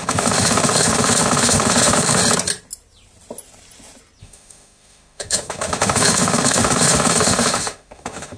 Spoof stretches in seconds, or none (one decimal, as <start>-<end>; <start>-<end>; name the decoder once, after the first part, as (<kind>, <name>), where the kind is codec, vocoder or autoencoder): 0.0-2.2 (autoencoder, DAC-VAE); 4.2-8.4